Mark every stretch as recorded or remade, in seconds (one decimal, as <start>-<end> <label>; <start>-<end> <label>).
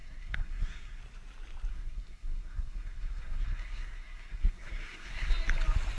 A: 0.0-1.0 remade; 1.0-1.7 recorded; 1.7-5.3 remade; 5.3-6.0 recorded